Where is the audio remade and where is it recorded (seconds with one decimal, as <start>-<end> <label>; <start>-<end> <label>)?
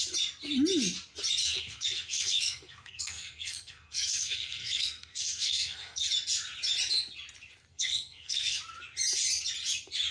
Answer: 0.0-1.4 recorded; 1.4-6.1 remade; 6.1-7.7 recorded; 7.7-8.6 remade; 8.6-10.1 recorded